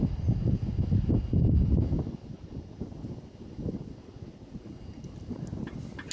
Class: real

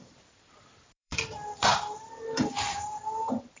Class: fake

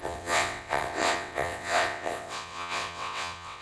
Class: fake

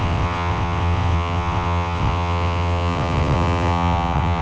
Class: fake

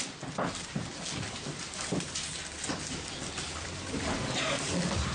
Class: real